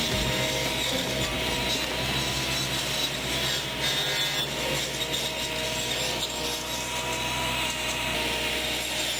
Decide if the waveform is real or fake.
real